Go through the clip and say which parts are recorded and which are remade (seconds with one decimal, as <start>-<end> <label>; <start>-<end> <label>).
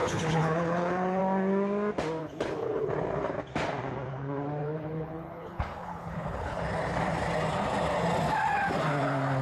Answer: 0.0-1.2 remade; 1.2-2.2 recorded; 2.2-2.9 remade; 2.9-4.6 recorded; 4.6-6.6 remade; 6.6-9.4 recorded